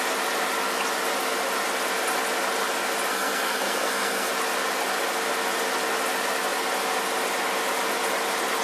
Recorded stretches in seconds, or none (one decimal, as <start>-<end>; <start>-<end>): 0.0-3.1; 4.3-8.6